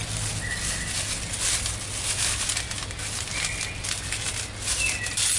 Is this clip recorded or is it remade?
recorded